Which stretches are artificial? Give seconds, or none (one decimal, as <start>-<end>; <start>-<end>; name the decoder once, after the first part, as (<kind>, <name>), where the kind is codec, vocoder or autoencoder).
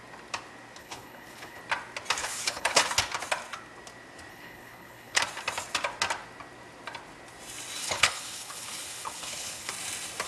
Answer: 0.8-1.6 (codec, HILCodec); 2.2-2.8; 4.3-5.2; 7.8-9.7